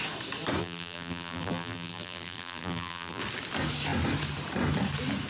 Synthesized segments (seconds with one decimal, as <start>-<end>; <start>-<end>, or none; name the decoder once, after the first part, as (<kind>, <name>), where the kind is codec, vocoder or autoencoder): 0.6-3.2 (vocoder, BigVGAN v2)